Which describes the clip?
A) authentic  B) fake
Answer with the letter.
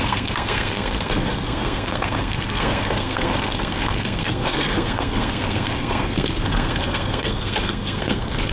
B